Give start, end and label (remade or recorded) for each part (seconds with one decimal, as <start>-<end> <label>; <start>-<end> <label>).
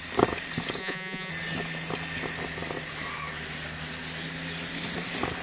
0.0-0.8 recorded; 0.8-1.3 remade; 1.3-5.4 recorded